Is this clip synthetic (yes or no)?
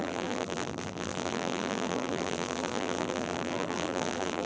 yes